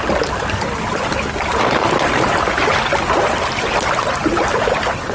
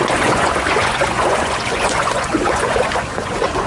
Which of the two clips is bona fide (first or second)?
first